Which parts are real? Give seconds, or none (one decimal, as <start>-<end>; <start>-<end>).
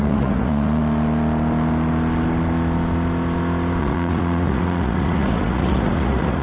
0.8-3.8